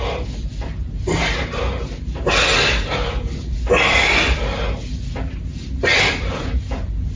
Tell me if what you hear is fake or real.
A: real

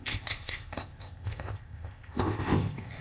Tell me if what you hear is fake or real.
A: fake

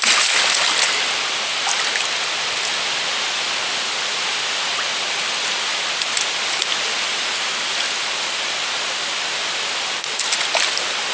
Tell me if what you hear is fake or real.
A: real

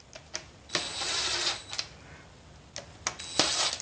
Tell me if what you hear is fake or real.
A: real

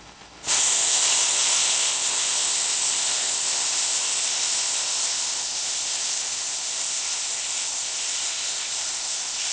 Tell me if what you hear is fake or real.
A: fake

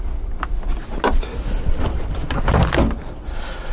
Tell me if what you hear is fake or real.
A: real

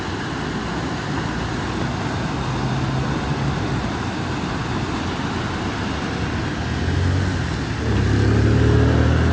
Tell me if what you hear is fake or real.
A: real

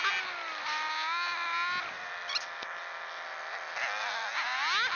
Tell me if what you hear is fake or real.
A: real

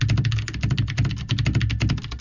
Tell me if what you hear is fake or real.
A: real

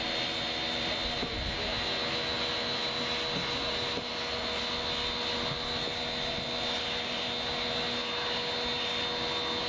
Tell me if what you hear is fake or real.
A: real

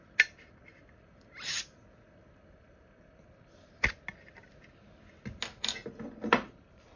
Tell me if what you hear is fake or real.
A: real